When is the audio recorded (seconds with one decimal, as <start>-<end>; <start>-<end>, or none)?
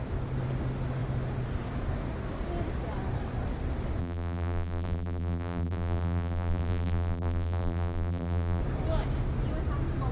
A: 0.0-4.0; 8.6-10.1